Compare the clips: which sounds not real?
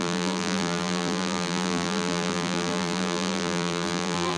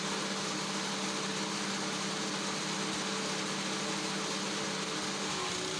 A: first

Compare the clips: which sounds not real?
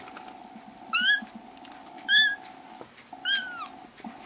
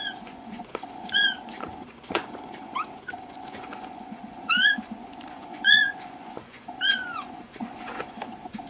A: second